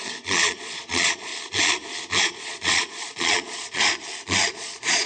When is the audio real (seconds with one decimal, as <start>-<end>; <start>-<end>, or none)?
1.3-2.2; 3.8-4.5

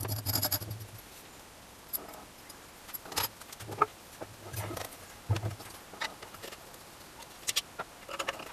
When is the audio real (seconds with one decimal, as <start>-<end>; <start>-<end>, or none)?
0.0-8.5

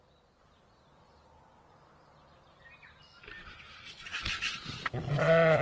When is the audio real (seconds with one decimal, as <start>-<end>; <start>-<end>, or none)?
0.0-5.6

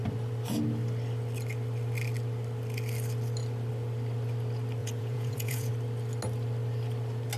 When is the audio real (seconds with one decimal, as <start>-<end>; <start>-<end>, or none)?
0.0-4.8; 5.7-7.4

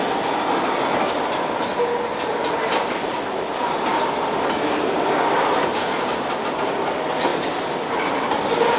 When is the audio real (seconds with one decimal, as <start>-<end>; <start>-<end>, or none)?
0.0-8.8

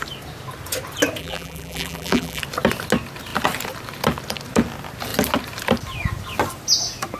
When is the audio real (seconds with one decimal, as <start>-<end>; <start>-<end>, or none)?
0.0-1.2; 2.4-7.2

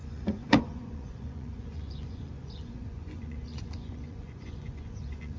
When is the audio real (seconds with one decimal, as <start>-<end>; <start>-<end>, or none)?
none

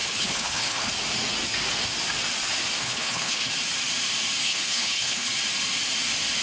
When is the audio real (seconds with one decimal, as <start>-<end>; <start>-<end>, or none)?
0.9-2.8; 3.5-4.4; 5.3-6.4